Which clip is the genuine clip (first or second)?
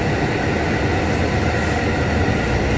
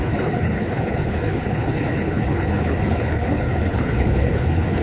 first